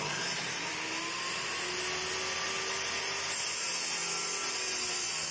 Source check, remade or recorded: recorded